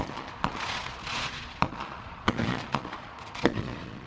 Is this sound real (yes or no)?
no